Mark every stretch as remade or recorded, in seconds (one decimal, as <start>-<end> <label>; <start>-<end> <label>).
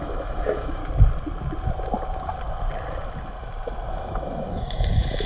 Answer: 0.0-0.8 remade; 0.8-3.9 recorded; 3.9-5.3 remade